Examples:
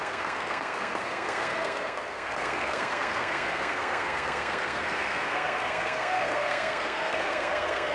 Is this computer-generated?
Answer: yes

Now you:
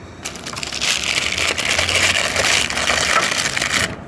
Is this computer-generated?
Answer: no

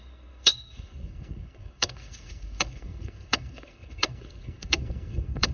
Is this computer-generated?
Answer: yes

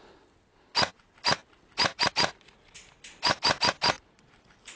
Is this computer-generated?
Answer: no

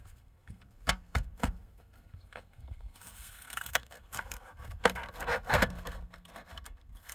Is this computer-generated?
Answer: yes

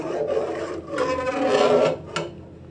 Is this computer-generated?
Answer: no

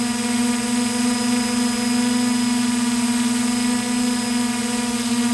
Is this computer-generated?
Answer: no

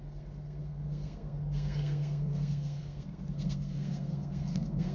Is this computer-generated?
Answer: yes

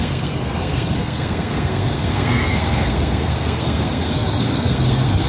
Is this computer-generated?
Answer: yes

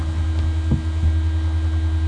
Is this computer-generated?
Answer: no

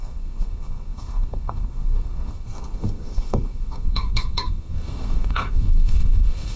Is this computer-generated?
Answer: yes